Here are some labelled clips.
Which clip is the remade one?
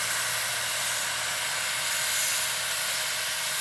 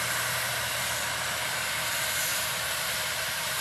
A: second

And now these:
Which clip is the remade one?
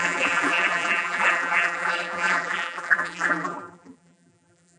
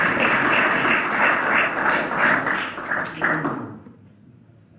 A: first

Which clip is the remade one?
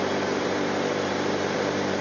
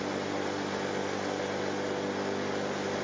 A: first